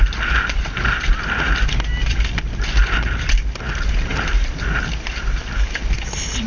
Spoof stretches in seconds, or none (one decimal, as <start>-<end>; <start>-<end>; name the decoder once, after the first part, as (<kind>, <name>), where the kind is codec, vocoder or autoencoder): none